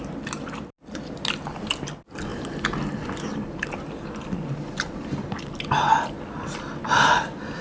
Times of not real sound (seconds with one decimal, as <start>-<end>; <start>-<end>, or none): none